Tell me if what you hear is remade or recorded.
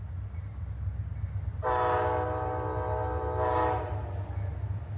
recorded